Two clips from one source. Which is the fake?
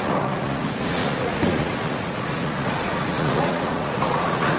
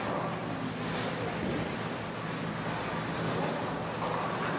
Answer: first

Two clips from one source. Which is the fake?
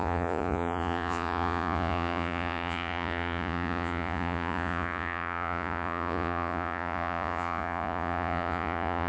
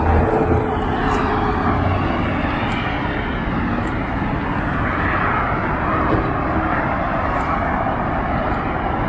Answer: first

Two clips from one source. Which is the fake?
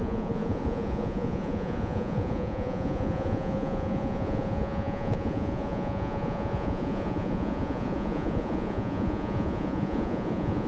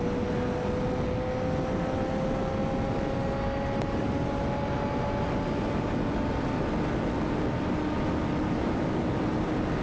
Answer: first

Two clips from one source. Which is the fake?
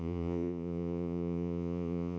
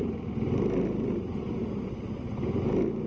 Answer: first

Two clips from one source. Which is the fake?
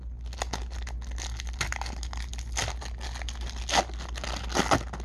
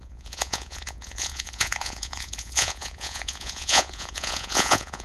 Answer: second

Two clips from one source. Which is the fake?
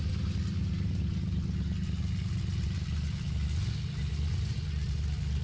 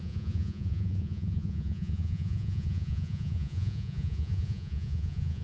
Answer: second